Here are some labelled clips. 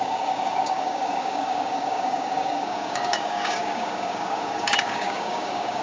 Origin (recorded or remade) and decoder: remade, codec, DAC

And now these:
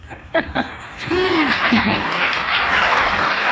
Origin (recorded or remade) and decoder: remade, codec, DAC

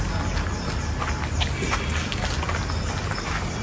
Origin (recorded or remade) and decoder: recorded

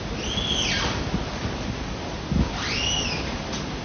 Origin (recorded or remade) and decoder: recorded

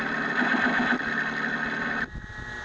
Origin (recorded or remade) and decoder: recorded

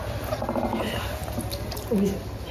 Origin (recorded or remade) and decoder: recorded